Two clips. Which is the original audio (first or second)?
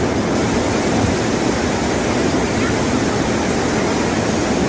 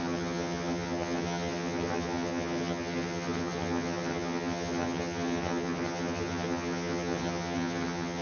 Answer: first